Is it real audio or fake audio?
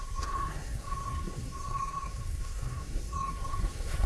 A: fake